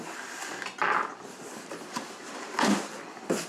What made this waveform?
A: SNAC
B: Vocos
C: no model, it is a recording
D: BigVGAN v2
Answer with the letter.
C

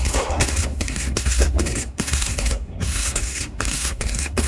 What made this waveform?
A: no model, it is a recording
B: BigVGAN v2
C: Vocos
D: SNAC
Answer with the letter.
D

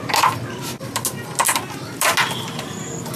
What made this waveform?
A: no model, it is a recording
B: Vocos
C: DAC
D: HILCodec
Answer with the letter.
A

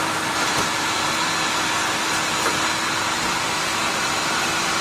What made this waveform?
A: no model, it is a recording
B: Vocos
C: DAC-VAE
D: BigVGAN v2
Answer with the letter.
D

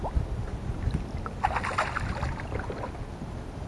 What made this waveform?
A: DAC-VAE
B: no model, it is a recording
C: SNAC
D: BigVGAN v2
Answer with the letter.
B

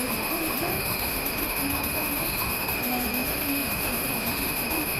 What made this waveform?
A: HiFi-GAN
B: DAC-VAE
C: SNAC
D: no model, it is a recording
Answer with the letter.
B